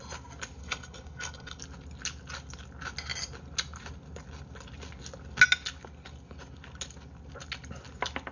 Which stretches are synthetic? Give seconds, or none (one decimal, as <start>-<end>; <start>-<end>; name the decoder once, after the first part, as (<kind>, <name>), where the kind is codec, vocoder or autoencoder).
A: 0.6-1.6 (codec, HILCodec)